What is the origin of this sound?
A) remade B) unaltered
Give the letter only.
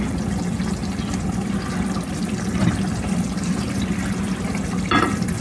B